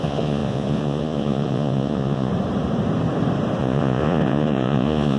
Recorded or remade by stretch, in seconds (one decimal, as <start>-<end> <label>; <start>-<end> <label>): 0.0-2.3 remade; 2.3-3.6 recorded; 3.6-5.2 remade